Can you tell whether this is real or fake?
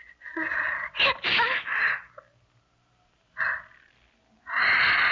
real